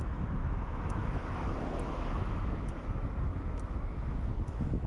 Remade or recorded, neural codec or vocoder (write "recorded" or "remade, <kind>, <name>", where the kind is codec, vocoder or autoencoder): remade, autoencoder, DAC-VAE